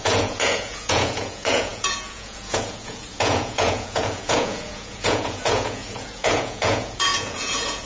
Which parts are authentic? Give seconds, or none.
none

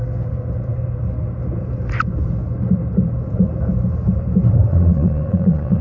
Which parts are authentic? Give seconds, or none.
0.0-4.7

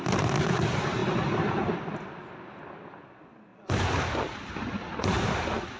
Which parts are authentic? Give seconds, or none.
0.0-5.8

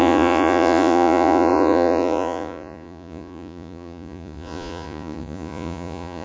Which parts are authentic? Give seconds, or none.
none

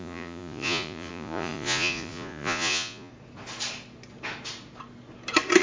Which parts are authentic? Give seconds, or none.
3.1-5.6

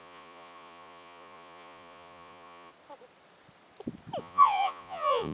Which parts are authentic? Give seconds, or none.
2.7-4.2

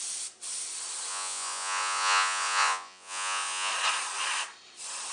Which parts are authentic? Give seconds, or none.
0.0-1.1; 3.7-5.1

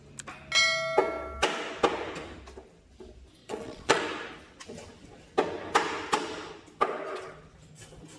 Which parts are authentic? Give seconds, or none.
0.0-3.4; 4.0-8.2